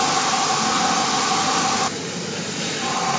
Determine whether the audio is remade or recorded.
recorded